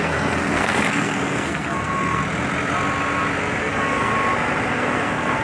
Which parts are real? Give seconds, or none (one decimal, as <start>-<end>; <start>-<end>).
2.2-3.6; 4.1-4.7